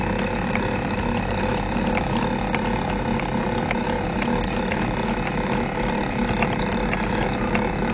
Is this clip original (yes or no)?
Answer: yes